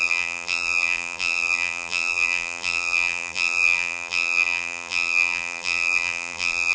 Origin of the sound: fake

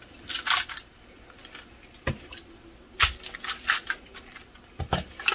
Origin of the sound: real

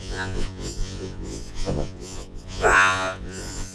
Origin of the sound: fake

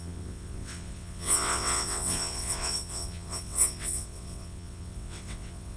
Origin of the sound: fake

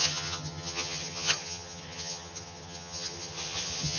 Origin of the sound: fake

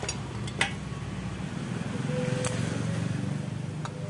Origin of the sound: real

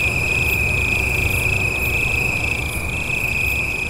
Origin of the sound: real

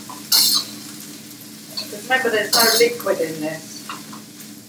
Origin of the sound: real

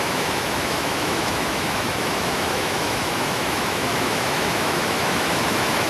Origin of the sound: fake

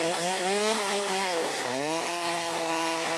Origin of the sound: fake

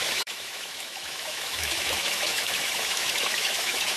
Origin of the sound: fake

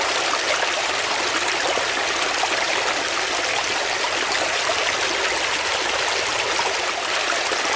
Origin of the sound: real